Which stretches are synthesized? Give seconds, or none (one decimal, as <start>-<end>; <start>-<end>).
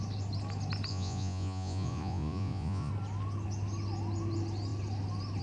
0.9-2.9